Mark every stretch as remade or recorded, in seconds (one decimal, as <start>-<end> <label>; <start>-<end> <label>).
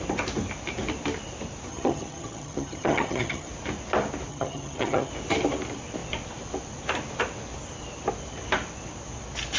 0.0-1.7 recorded; 1.7-3.5 remade; 3.5-4.3 recorded; 4.3-5.1 remade; 5.1-9.6 recorded